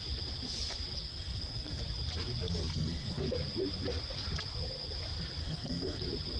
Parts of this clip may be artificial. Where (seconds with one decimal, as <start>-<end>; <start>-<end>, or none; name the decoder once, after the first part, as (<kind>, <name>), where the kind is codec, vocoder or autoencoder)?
1.1-1.8 (codec, SNAC); 2.7-3.2; 5.4-6.0